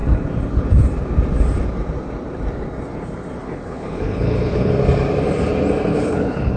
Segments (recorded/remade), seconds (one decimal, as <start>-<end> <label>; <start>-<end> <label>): 0.0-3.4 recorded; 3.4-4.7 remade; 4.7-5.9 recorded; 5.9-6.6 remade